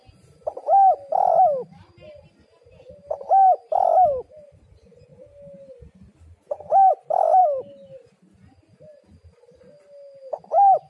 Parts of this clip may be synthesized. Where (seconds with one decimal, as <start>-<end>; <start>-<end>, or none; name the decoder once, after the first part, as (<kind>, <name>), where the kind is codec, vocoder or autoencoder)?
none